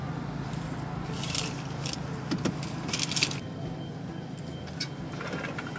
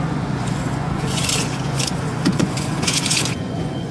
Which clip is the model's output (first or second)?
second